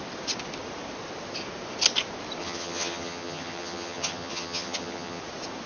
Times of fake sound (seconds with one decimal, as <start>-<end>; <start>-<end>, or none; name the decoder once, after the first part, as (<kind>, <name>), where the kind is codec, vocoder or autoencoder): 2.4-5.2 (vocoder, HiFi-GAN)